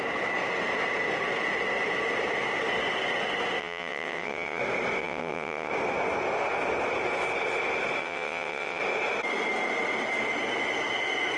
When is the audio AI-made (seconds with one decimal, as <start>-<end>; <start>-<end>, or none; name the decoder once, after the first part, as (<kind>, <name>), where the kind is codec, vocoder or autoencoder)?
3.6-4.6 (vocoder, WaveNeXt); 5.0-5.7; 8.0-8.8